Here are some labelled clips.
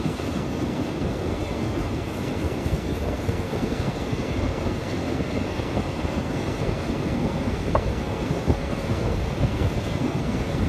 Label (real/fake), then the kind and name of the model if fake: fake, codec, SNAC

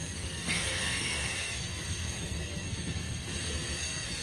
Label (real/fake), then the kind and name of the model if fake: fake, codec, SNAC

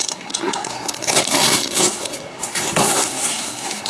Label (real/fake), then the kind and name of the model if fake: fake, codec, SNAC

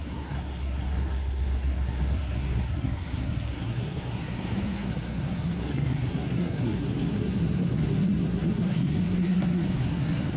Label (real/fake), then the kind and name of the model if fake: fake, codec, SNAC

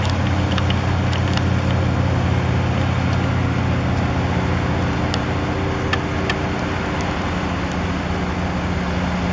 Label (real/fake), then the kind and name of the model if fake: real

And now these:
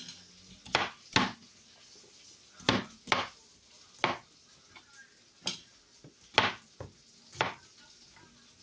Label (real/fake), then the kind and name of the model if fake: real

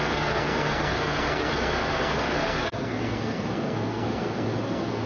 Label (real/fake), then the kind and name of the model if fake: fake, codec, SNAC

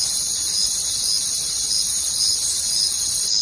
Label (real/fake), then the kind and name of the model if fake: real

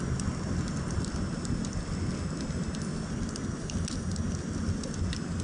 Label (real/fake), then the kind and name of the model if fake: real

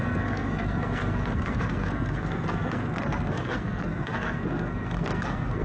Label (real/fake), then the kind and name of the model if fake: fake, codec, SNAC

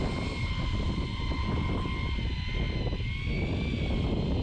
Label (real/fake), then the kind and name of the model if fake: real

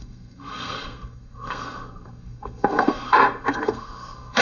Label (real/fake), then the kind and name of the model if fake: fake, codec, SNAC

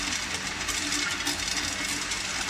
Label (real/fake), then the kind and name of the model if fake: real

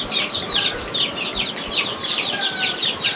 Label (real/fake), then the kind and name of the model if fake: real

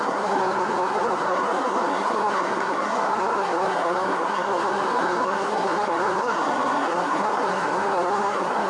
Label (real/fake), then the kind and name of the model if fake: fake, codec, SNAC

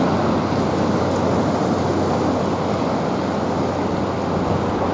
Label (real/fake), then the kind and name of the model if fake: real